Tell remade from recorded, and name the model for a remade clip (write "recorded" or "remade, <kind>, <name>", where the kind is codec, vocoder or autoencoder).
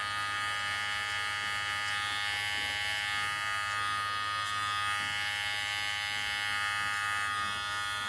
recorded